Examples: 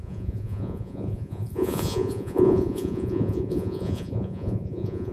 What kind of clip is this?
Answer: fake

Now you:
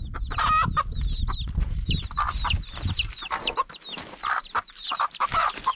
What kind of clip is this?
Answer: real